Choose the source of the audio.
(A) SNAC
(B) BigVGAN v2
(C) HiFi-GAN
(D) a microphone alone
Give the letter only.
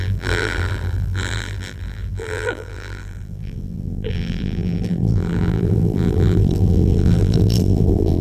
B